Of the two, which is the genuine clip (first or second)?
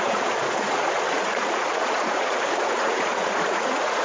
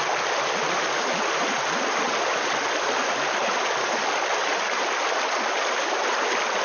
second